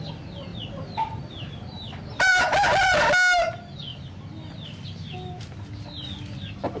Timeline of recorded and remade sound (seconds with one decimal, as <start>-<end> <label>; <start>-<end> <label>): 0.0-6.8 recorded